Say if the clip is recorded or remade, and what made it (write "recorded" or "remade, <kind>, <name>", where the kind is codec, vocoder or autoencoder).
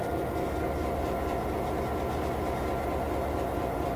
recorded